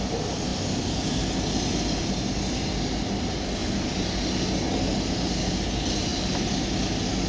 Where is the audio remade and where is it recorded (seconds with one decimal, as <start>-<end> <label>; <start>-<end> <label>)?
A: 0.0-7.3 recorded